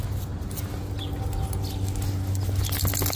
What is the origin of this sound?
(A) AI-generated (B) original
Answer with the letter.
B